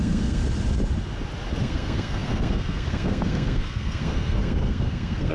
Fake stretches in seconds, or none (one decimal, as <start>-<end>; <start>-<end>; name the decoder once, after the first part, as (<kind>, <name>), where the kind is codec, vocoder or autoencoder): 0.0-0.4 (codec, SNAC); 1.6-5.3